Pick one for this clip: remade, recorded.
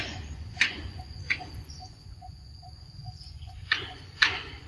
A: remade